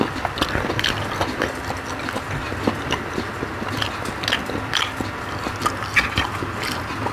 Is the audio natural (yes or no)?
yes